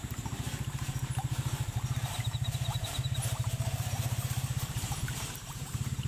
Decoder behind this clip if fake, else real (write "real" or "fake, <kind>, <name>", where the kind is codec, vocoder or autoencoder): fake, vocoder, BigVGAN v2